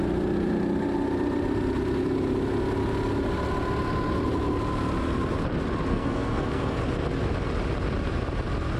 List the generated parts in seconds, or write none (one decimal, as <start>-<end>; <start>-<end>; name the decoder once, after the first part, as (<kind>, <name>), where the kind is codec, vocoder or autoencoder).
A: 5.9-6.8 (codec, SNAC)